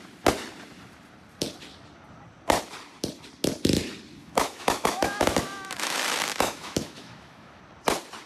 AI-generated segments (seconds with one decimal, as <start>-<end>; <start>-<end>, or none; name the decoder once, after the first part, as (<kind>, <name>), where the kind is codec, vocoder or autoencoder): 4.2-7.6 (autoencoder, DAC-VAE)